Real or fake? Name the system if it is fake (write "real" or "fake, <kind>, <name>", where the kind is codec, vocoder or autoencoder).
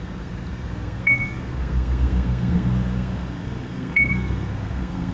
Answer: fake, codec, SNAC